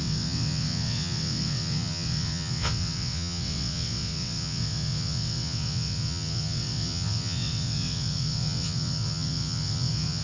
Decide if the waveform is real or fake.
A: fake